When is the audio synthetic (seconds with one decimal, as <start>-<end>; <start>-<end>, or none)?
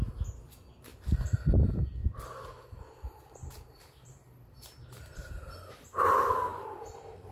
0.9-1.5; 2.0-6.0; 6.5-7.3